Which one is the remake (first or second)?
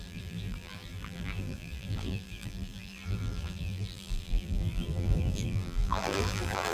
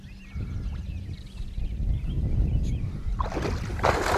first